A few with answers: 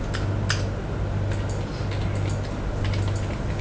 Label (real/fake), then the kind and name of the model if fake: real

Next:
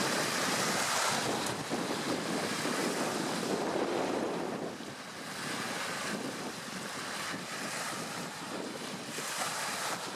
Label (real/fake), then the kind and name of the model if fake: real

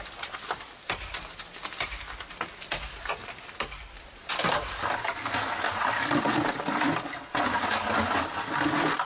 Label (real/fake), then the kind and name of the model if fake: real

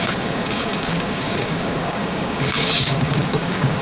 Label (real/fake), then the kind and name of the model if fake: fake, codec, DAC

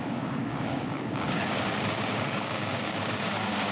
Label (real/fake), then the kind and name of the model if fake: fake, codec, DAC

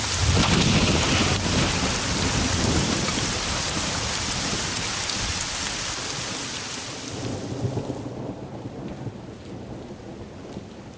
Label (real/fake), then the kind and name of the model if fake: real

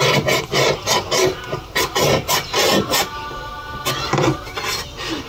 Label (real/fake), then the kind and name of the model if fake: real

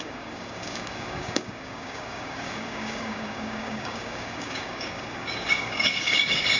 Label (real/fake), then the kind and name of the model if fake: fake, codec, DAC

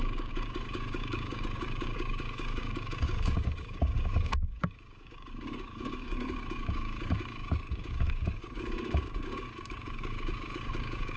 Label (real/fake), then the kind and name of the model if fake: fake, codec, DAC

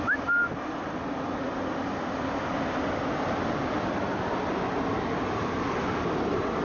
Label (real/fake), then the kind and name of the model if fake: real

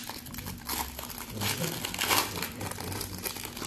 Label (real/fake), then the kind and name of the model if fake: real